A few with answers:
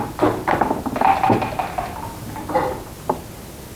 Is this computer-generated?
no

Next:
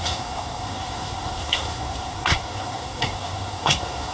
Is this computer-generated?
yes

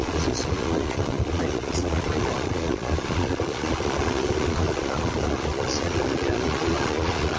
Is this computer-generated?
yes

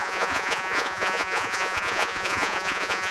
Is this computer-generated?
yes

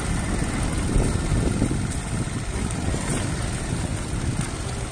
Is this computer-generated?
no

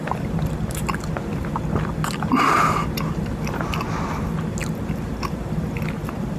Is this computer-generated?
no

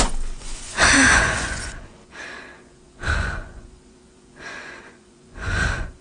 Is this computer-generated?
yes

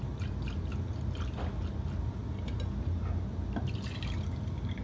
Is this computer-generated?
no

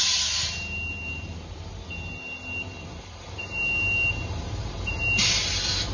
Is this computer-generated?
no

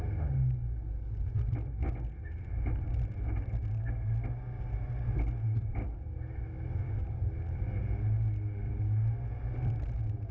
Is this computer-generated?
no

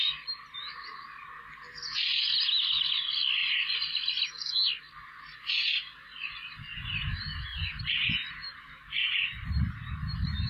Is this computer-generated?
no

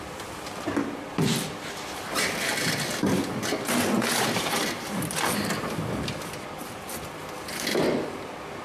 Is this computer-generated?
no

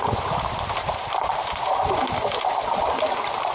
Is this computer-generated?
no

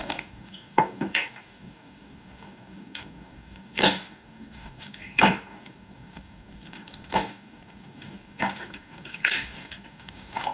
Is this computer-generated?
yes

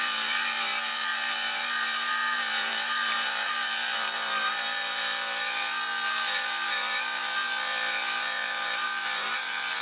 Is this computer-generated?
yes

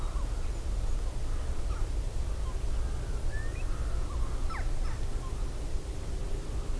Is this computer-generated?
no